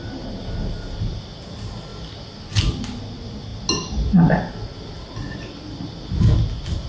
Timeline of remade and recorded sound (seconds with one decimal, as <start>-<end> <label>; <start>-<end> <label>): 0.0-6.9 recorded